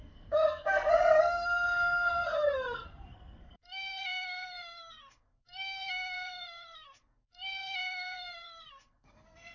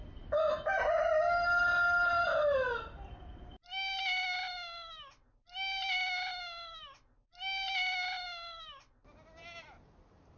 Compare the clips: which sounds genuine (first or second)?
second